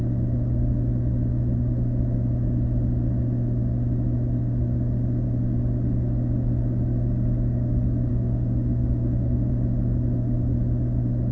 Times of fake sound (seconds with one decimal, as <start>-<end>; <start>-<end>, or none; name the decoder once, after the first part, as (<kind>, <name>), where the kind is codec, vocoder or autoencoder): 8.1-9.5 (autoencoder, DAC-VAE)